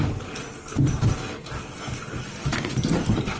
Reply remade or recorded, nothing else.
recorded